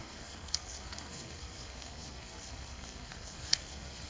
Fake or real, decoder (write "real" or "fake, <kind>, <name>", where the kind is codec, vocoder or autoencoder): fake, codec, SNAC